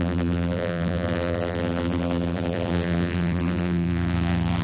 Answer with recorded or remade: remade